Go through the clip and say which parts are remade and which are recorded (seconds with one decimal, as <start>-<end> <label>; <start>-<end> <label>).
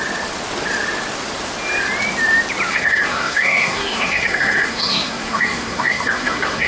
0.0-2.7 recorded; 2.7-6.7 remade